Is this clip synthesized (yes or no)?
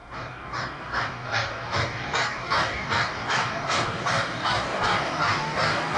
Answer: yes